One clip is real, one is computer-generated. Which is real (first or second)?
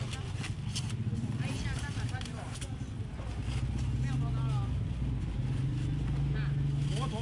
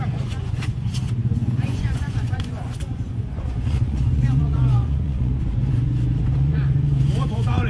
first